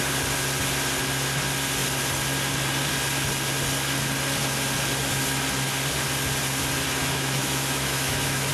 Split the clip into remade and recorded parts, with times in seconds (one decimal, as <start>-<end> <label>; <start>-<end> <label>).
0.0-7.0 recorded; 7.0-8.5 remade